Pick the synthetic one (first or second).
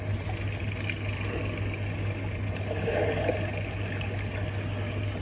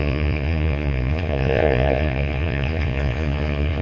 second